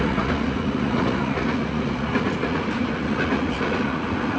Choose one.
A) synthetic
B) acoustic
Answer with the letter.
A